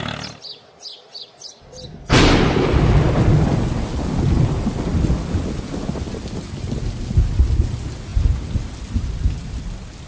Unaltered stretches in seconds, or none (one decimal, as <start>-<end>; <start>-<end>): 0.0-10.1

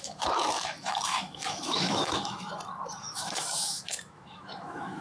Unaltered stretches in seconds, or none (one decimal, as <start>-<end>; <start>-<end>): 2.5-3.0

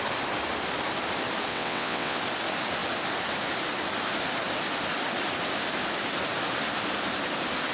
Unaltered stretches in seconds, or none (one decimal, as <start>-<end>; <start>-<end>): 0.0-1.5; 2.2-7.7

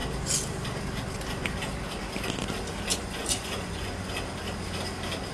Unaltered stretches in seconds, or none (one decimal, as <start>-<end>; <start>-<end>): 0.0-2.9; 4.1-5.3

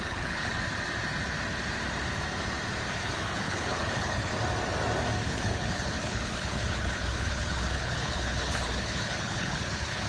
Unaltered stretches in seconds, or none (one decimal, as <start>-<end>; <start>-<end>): 0.5-2.9; 4.3-5.2

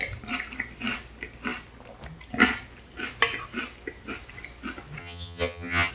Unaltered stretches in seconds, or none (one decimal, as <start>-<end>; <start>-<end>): 0.0-5.0

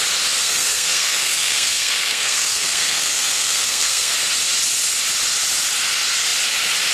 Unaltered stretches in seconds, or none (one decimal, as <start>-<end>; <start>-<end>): 0.0-0.4; 4.1-6.9

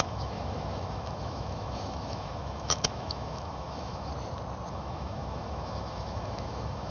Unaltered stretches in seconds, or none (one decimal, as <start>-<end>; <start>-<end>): 4.1-4.7